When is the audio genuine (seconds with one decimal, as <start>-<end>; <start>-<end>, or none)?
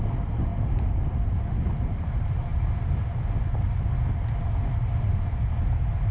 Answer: 0.0-0.5; 1.5-6.1